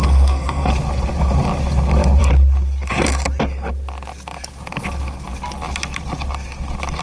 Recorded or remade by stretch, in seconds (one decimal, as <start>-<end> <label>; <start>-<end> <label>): 0.0-0.7 remade; 0.7-7.0 recorded